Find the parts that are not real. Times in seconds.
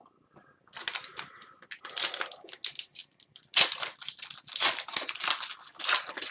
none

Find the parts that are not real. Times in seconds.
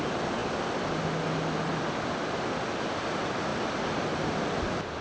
none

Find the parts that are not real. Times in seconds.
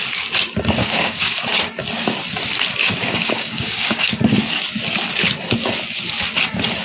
0.8-1.3 (codec, DAC); 2.8-4.2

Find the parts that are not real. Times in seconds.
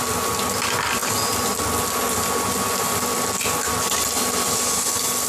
none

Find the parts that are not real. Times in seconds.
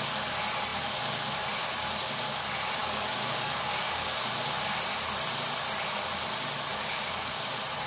2.8-4.4 (codec, DAC); 6.7-7.4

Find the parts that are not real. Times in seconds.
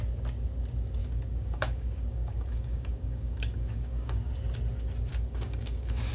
1.0-4.3 (codec, DAC); 5.1-6.1